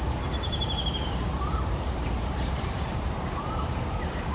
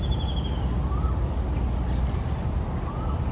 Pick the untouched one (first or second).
second